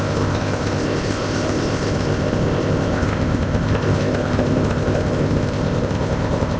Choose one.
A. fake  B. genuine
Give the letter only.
A